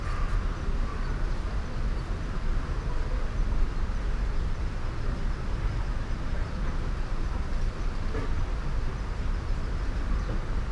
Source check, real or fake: real